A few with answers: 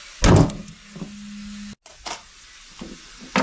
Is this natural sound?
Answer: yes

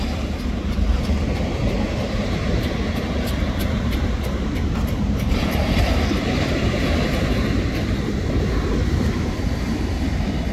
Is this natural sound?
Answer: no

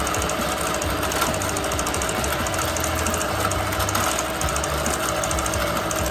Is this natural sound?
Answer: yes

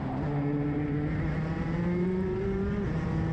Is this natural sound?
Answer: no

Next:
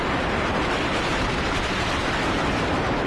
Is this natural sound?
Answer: no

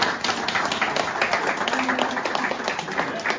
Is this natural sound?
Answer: yes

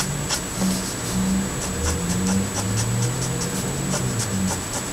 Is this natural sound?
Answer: yes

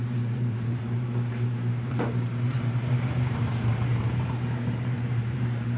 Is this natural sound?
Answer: no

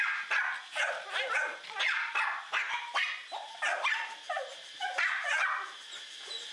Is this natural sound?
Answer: yes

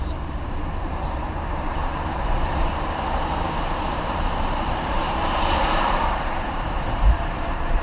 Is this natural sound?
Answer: no